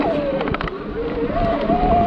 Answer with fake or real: real